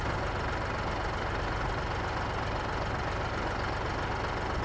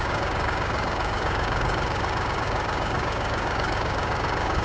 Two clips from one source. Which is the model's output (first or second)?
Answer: second